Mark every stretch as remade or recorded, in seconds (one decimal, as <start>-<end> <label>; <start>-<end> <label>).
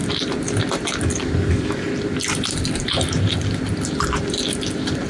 0.0-1.0 recorded; 1.0-1.9 remade; 1.9-5.1 recorded